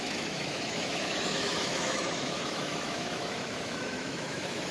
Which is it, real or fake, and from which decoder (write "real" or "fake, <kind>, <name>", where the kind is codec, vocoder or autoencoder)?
fake, autoencoder, DAC-VAE